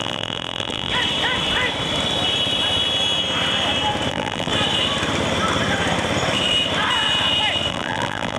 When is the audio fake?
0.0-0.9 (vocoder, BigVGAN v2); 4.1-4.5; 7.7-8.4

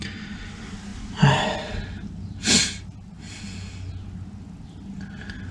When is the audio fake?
none

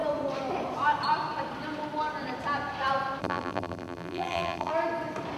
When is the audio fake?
3.2-4.7 (vocoder, BigVGAN v2)

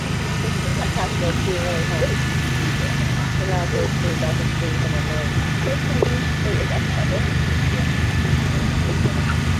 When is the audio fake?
0.0-0.7 (vocoder, BigVGAN v2); 2.7-9.6